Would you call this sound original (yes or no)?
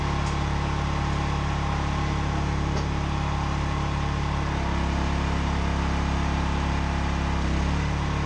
yes